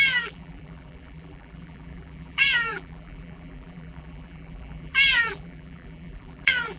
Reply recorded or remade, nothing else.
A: remade